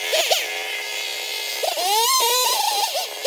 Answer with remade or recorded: recorded